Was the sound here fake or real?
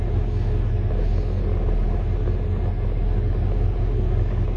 real